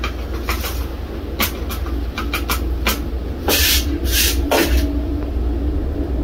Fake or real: real